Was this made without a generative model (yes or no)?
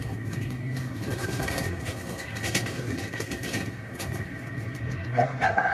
no